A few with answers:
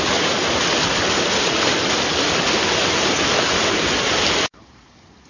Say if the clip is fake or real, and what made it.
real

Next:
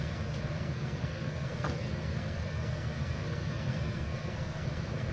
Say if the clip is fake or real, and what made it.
fake, codec, SNAC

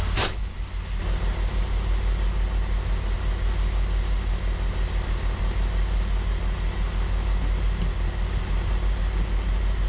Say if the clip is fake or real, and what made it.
real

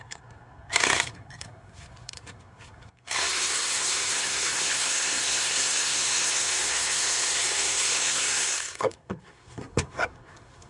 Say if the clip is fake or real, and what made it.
fake, codec, SNAC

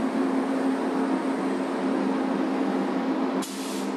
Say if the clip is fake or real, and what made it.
real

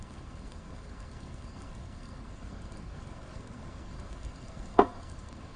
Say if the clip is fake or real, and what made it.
fake, codec, SNAC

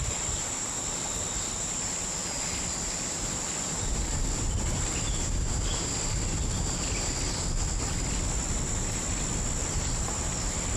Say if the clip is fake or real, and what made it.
real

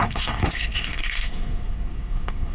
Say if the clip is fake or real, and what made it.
fake, codec, SNAC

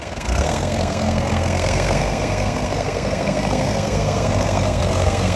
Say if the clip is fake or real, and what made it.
fake, codec, SNAC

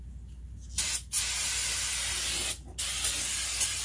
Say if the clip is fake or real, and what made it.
real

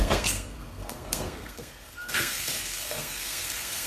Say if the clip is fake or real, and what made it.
fake, codec, SNAC